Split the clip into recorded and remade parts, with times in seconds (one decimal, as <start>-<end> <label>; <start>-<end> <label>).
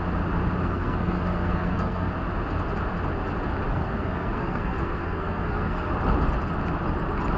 0.0-0.6 recorded; 0.6-2.1 remade; 2.1-3.7 recorded; 3.7-5.9 remade; 5.9-7.4 recorded